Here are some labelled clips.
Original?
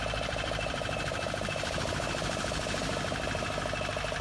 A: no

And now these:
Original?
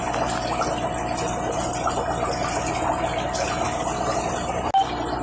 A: yes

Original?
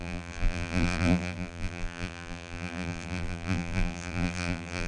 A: no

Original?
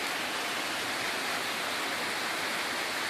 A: yes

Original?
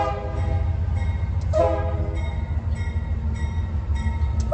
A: yes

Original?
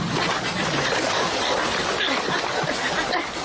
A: yes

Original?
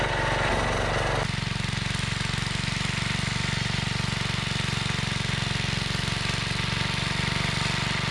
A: yes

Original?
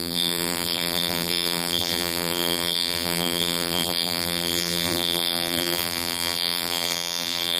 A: no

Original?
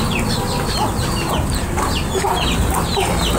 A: yes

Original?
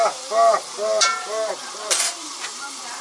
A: no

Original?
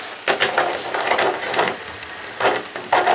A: yes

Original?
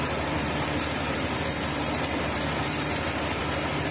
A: no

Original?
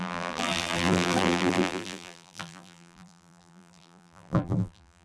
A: no